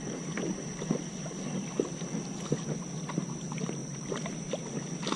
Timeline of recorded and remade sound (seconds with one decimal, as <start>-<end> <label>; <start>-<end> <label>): 0.0-5.2 recorded